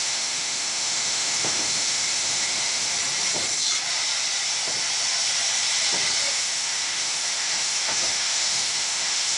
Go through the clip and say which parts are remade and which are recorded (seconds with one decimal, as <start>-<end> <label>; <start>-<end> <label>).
0.0-2.9 remade; 2.9-6.3 recorded; 6.3-9.4 remade